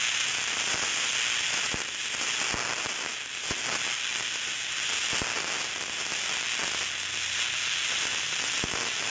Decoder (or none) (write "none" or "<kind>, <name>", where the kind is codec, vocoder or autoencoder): none